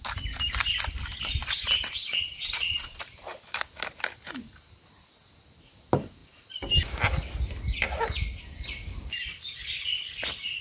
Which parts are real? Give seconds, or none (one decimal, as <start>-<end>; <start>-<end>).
0.0-2.0; 3.0-10.6